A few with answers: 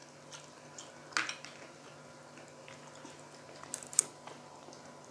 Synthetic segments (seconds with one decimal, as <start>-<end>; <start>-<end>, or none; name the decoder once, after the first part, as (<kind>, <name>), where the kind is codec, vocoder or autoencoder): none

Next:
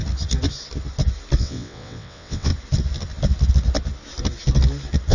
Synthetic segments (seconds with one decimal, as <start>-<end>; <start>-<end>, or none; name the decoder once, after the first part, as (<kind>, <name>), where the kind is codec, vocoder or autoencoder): 1.4-2.5 (vocoder, WaveNeXt)

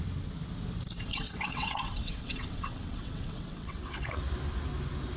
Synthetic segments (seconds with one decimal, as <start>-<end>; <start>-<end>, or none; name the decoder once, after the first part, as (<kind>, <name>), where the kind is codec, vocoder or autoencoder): 1.1-4.2 (vocoder, WaveNeXt)

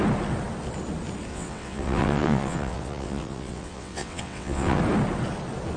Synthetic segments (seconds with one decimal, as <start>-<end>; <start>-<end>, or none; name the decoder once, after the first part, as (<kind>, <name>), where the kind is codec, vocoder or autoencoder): 1.3-4.8 (vocoder, WaveNeXt)